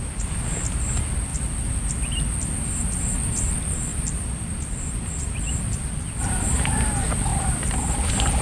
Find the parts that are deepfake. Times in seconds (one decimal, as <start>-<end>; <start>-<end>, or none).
3.9-4.5; 7.3-8.4